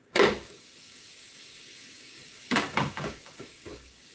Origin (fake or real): fake